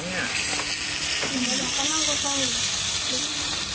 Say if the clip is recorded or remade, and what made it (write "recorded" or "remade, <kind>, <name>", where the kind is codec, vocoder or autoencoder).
recorded